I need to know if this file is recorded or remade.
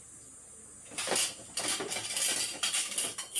recorded